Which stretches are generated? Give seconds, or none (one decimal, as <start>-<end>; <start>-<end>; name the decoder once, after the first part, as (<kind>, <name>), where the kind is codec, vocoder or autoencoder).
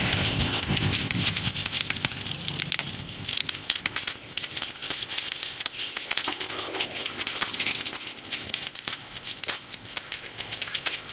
0.0-2.3 (codec, ZipCodec); 2.9-11.1